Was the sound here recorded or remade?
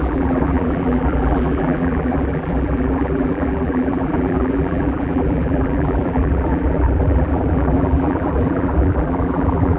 remade